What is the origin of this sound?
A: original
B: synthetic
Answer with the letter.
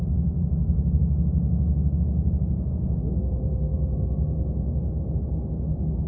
A